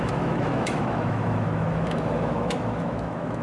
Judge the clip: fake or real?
fake